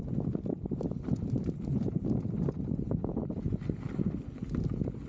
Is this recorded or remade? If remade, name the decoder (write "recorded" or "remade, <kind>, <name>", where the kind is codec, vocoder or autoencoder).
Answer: recorded